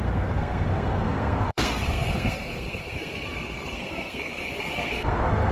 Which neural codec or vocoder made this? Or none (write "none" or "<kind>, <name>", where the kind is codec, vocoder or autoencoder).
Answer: codec, SNAC